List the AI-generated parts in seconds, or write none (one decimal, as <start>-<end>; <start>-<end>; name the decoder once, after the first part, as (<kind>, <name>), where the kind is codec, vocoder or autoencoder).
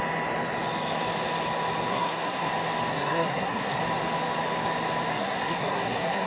1.9-2.5 (codec, SNAC); 2.9-3.8; 5.1-6.3